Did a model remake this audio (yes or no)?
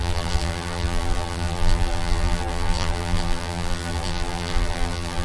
yes